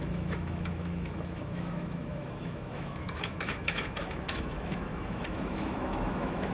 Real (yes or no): no